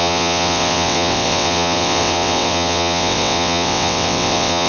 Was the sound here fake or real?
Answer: fake